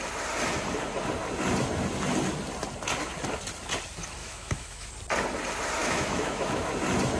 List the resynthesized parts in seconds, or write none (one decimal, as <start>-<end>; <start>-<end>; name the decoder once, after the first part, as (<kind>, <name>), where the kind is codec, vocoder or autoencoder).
4.2-4.9 (autoencoder, DAC-VAE); 5.8-6.7